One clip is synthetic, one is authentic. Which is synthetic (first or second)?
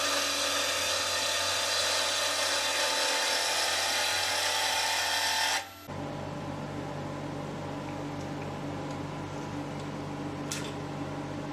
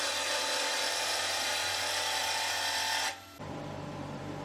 second